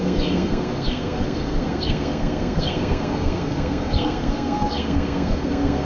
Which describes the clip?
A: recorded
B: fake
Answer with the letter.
B